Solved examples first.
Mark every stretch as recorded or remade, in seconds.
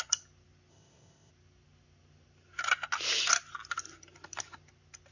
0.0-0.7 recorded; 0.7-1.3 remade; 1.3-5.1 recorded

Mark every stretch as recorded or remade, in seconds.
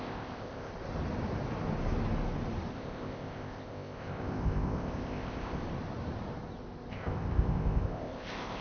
0.0-0.7 remade; 0.7-2.7 recorded; 2.7-5.6 remade; 5.6-6.9 recorded; 6.9-8.6 remade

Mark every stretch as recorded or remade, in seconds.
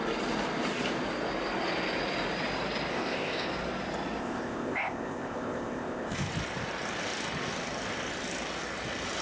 0.0-2.9 recorded; 2.9-3.5 remade; 3.5-4.2 recorded; 4.2-6.3 remade; 6.3-9.2 recorded